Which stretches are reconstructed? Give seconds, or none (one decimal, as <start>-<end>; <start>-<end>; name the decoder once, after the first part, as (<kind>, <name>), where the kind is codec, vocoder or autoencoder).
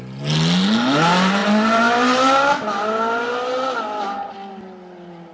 none